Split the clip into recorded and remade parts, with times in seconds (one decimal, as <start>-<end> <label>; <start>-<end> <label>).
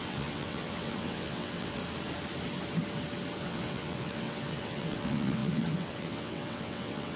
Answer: 0.0-1.8 remade; 1.8-3.4 recorded; 3.4-7.2 remade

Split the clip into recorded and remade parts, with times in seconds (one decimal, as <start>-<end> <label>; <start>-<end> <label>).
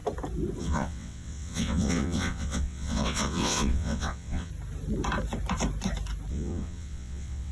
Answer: 0.0-0.6 recorded; 0.6-4.5 remade; 4.5-6.3 recorded; 6.3-7.5 remade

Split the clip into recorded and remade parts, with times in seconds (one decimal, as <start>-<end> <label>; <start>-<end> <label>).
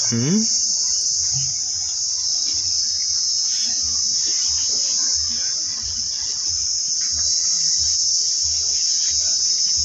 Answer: 0.0-2.3 recorded; 2.3-2.9 remade; 2.9-5.7 recorded; 5.7-6.8 remade; 6.8-9.8 recorded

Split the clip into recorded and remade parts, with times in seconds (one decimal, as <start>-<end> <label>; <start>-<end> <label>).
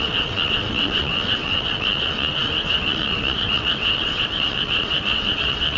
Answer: 0.0-5.8 remade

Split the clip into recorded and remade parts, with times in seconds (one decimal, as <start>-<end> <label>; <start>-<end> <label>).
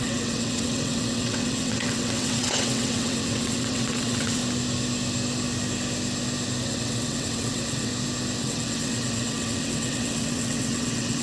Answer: 0.0-4.4 remade; 4.4-6.6 recorded; 6.6-7.9 remade; 7.9-8.4 recorded; 8.4-11.2 remade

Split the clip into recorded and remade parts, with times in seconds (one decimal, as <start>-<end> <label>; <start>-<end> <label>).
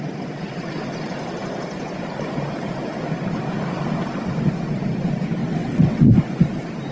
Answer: 0.0-5.4 recorded; 5.4-6.1 remade; 6.1-6.9 recorded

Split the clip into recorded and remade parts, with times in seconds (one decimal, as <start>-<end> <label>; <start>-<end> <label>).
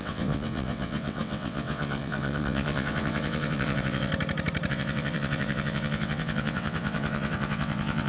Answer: 0.0-4.1 remade; 4.1-4.7 recorded; 4.7-8.1 remade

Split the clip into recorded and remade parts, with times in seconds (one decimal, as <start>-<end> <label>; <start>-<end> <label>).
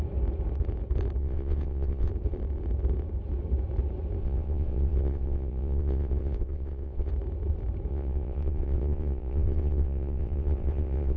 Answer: 0.0-1.2 recorded; 1.2-2.1 remade; 2.1-4.2 recorded; 4.2-7.1 remade; 7.1-7.9 recorded; 7.9-11.2 remade